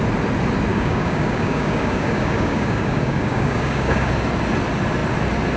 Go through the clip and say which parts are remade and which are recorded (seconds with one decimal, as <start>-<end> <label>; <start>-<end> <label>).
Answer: 0.0-0.7 recorded; 0.7-4.1 remade; 4.1-5.6 recorded